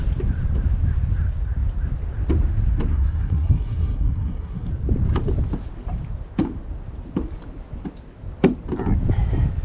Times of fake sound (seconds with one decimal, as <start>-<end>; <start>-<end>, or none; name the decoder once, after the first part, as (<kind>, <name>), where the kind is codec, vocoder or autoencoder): 2.9-4.7 (codec, SNAC)